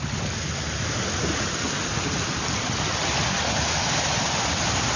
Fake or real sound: real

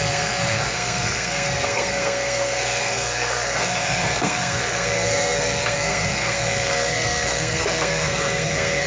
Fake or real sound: fake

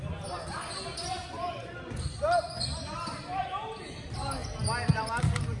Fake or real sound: real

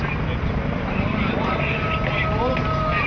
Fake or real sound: real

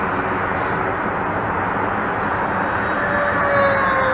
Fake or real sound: real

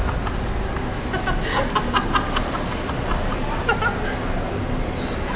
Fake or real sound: real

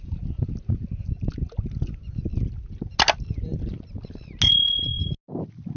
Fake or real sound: real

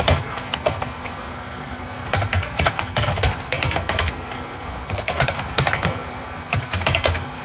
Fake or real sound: fake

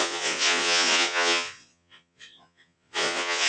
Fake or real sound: fake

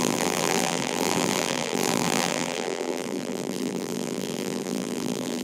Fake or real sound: fake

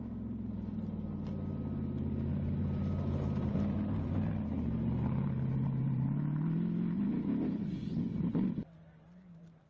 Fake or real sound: real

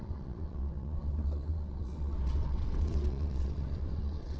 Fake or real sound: fake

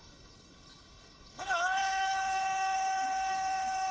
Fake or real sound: fake